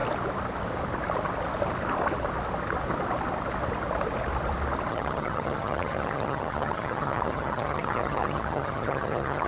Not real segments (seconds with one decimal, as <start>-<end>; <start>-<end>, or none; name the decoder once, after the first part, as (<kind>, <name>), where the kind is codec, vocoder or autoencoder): 4.9-9.5 (vocoder, HiFi-GAN)